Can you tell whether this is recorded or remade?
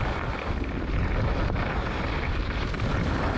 recorded